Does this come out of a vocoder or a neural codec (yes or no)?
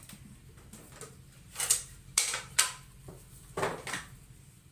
no